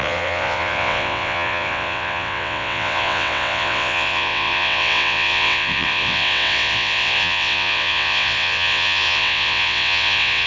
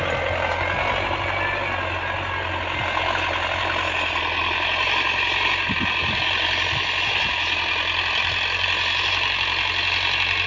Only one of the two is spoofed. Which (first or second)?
first